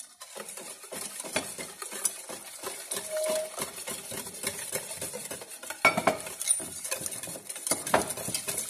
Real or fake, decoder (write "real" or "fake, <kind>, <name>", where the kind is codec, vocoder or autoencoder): real